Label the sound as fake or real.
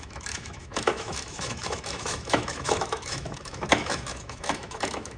fake